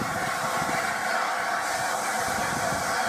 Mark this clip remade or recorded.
recorded